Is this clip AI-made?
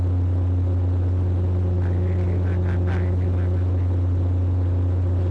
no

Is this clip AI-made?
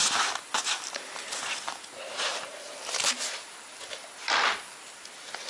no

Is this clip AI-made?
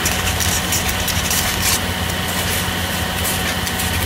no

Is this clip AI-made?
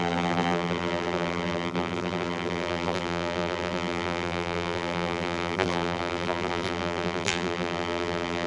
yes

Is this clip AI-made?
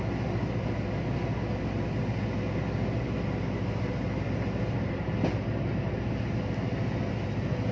no